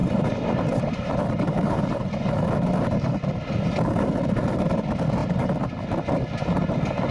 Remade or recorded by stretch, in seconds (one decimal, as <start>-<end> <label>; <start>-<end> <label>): 0.0-2.3 remade; 2.3-7.1 recorded